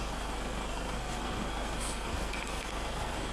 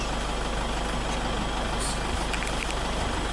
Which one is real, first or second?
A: second